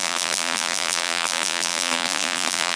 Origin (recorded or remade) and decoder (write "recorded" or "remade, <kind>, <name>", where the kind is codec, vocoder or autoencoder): remade, vocoder, BigVGAN v2